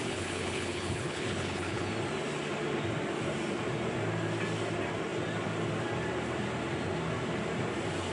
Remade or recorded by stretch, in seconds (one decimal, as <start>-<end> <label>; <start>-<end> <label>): 0.0-1.9 remade; 1.9-8.1 recorded